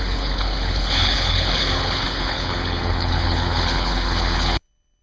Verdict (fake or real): fake